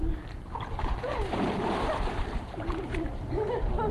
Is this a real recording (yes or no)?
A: no